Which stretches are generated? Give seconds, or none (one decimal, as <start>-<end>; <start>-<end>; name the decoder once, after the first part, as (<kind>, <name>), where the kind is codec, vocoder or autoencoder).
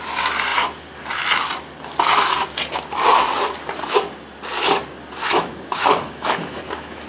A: 5.2-6.6 (autoencoder, DAC-VAE)